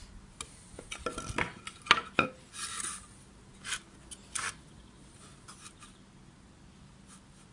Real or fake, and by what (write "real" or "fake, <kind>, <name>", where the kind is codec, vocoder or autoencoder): real